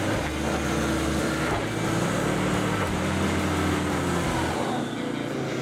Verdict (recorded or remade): recorded